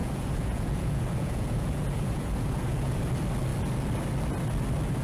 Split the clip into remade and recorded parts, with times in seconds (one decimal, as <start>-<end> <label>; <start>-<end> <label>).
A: 0.0-3.0 remade; 3.0-5.0 recorded